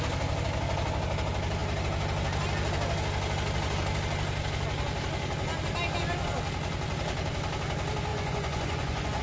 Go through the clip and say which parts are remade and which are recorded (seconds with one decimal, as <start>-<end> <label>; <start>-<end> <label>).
0.0-8.1 recorded; 8.1-9.2 remade